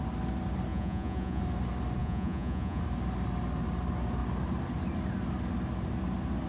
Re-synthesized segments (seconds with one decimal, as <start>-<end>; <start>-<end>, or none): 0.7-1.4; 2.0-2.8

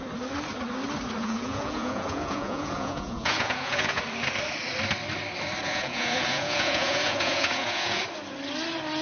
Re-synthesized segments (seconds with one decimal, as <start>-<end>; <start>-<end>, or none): 1.2-4.0; 5.6-8.0

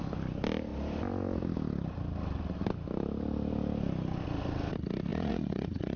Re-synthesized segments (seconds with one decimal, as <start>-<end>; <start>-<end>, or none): 5.1-6.0

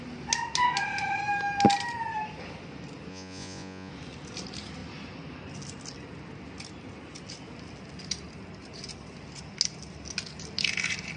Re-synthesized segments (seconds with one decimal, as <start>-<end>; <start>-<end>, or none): 3.1-3.9

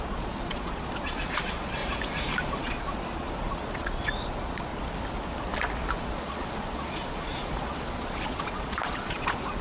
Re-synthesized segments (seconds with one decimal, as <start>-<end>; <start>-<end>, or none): 0.0-1.8; 2.6-4.7; 6.0-9.6

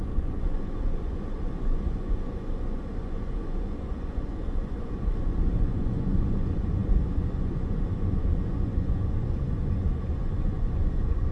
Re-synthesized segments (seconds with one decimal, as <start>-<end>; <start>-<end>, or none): 0.0-11.3

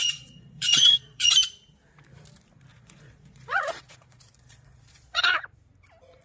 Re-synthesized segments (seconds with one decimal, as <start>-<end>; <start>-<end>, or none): 0.0-1.3; 2.7-5.4

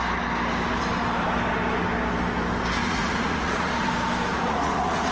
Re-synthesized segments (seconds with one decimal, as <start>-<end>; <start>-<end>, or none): 2.8-3.9; 4.3-5.1